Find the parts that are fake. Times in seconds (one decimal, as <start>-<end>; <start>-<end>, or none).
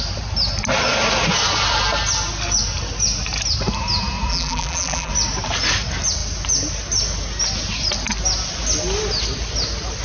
4.3-5.1